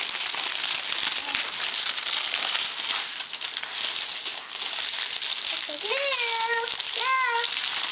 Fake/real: real